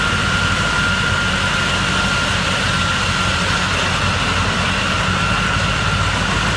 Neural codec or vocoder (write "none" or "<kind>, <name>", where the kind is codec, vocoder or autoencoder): none